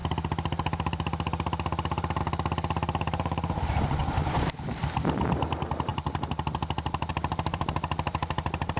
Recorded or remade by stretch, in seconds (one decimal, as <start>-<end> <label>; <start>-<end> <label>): 0.0-8.8 remade